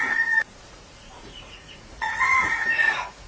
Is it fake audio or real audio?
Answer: fake